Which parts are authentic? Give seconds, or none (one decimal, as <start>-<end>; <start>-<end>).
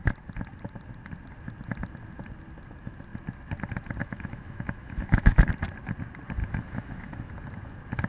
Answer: 0.0-4.0; 5.5-6.4; 7.3-8.1